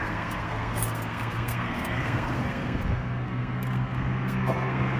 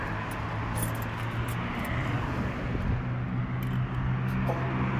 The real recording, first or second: second